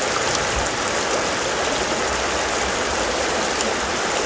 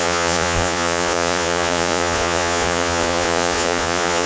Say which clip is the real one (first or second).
first